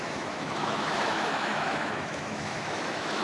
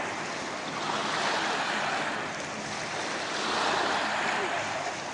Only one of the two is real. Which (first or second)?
second